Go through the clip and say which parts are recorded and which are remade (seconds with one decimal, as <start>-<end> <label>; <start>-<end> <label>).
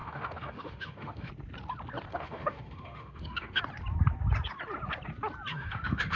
0.0-1.3 remade; 1.3-2.1 recorded; 2.1-3.6 remade; 3.6-5.5 recorded; 5.5-6.2 remade